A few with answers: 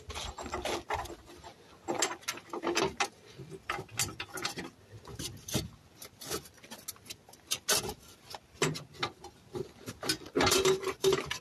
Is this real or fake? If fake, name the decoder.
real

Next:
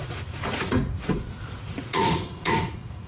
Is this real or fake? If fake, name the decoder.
fake, vocoder, Vocos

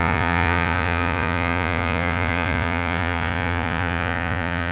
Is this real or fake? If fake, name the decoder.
fake, vocoder, Vocos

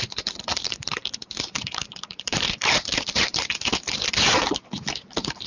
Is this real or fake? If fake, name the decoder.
fake, vocoder, BigVGAN v2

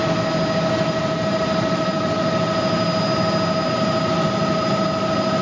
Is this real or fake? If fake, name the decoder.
real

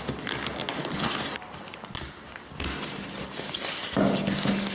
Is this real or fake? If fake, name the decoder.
real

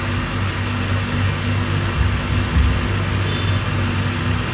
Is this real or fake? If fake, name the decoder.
real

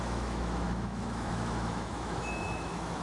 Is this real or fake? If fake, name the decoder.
fake, autoencoder, DAC-VAE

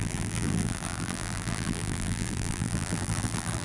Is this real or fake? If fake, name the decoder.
fake, vocoder, BigVGAN v2